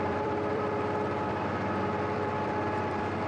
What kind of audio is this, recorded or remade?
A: remade